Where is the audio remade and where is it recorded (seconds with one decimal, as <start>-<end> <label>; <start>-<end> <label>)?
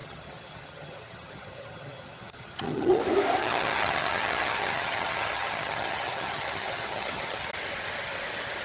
0.0-3.0 remade; 3.0-3.4 recorded; 3.4-7.5 remade; 7.5-8.6 recorded